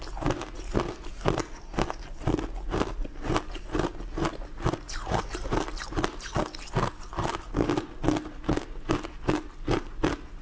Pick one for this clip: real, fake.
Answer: real